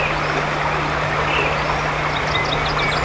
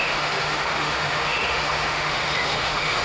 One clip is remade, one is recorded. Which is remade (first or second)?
second